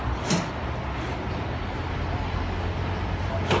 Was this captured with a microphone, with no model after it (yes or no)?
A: yes